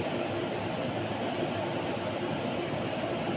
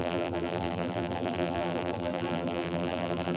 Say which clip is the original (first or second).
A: first